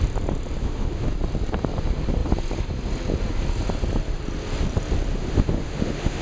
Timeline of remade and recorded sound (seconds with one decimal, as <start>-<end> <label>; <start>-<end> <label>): 0.0-0.6 recorded; 0.6-1.1 remade; 1.1-5.2 recorded; 5.2-6.2 remade